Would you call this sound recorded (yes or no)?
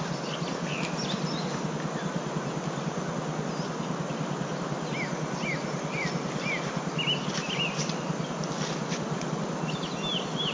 yes